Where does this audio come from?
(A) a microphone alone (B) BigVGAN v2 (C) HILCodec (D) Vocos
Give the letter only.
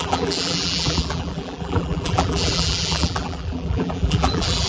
B